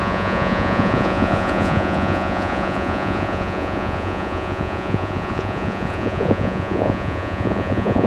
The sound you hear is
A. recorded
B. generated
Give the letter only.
B